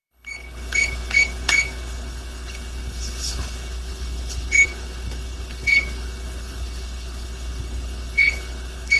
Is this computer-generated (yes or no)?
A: yes